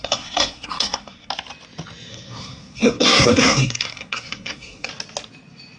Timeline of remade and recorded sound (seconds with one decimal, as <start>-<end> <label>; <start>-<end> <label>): 0.0-1.3 remade; 1.3-2.1 recorded; 2.1-4.9 remade; 4.9-5.8 recorded